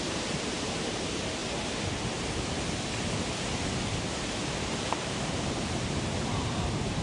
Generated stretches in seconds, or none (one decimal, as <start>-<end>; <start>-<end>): 0.0-1.4; 4.9-7.0